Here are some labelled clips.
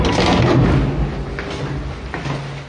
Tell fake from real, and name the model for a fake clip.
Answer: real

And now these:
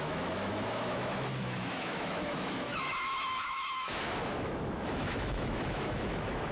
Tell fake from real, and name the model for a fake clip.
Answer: fake, autoencoder, DAC-VAE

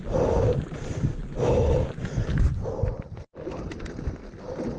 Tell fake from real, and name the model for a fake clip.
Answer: real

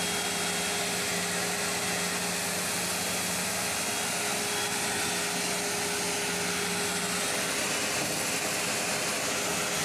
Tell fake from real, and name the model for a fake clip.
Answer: real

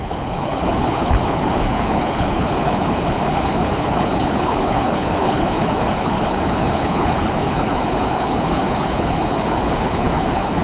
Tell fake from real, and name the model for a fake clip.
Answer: fake, codec, HILCodec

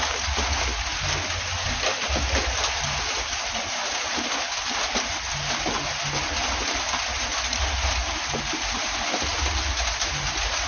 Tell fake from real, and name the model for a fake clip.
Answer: real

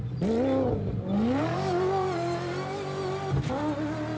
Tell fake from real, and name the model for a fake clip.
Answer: real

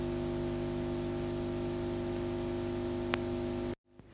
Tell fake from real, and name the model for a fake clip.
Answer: real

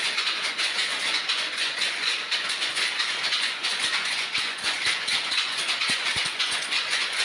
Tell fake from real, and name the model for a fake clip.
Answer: fake, vocoder, Vocos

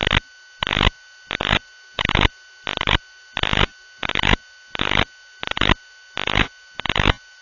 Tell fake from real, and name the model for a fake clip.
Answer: real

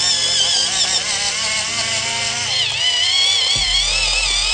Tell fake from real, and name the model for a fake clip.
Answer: real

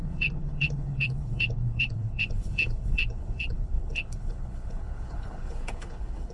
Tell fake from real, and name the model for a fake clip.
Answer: fake, codec, HILCodec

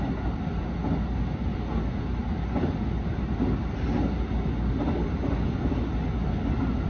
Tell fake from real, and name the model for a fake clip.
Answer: real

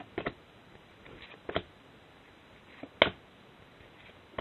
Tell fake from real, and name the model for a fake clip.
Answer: real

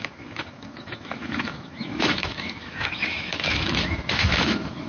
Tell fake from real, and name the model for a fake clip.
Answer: fake, autoencoder, DAC-VAE